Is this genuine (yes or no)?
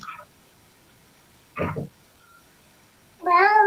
no